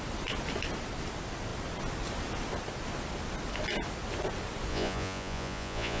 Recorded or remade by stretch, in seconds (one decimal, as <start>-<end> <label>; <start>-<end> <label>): 0.0-4.7 recorded; 4.7-6.0 remade